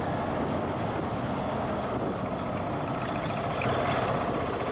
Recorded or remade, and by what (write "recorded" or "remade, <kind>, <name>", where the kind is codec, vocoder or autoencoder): recorded